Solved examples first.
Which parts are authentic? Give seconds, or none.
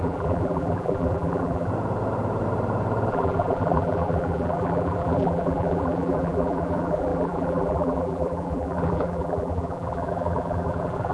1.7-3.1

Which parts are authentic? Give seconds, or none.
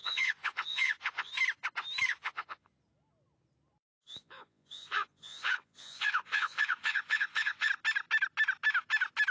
1.3-2.1; 2.7-4.0; 7.7-9.3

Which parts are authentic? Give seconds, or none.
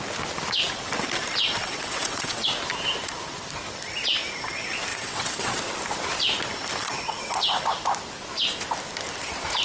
0.0-1.6; 2.5-4.9; 5.6-6.8; 7.6-9.6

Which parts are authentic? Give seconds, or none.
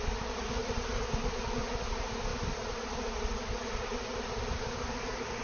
0.0-5.4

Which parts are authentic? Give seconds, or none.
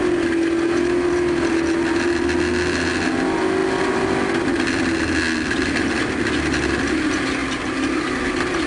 0.0-8.7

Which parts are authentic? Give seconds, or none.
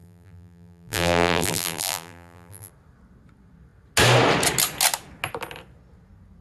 2.7-6.4